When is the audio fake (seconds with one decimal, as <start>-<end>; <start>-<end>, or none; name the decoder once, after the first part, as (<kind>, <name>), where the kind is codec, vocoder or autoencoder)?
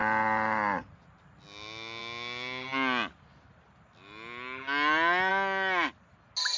none